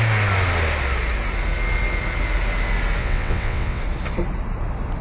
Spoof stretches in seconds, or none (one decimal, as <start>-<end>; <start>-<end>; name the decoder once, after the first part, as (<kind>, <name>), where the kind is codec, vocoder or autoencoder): 3.0-3.8 (vocoder, WaveNeXt)